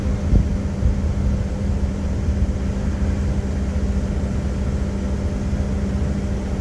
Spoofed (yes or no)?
no